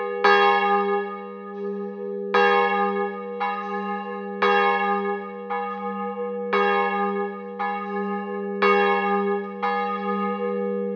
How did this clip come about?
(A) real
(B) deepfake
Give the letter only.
A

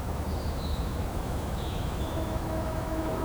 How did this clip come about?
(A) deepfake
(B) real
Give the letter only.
A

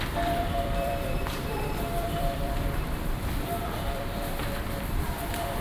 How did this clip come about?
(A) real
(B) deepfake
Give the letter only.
B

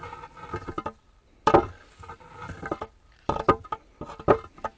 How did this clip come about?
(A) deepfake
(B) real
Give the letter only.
B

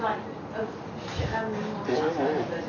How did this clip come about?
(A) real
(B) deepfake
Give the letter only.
A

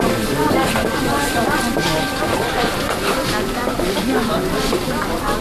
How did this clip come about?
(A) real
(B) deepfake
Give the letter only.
B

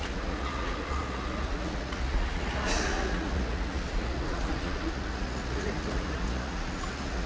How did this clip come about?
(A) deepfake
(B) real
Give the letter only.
A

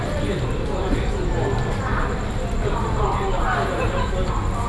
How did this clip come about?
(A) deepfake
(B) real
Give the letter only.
B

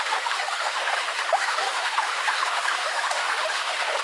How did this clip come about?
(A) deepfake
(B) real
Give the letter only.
A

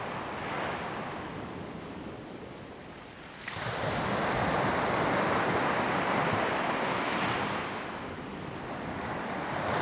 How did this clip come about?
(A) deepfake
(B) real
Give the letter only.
B